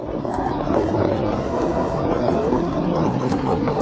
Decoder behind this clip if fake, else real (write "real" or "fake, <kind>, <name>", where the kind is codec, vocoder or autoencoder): fake, codec, SNAC